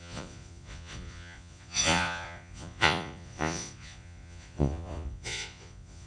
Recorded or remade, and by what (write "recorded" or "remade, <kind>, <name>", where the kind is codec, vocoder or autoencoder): remade, vocoder, Vocos